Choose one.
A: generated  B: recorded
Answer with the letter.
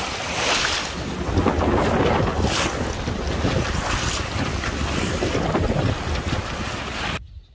B